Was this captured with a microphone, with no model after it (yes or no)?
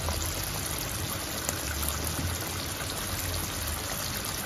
yes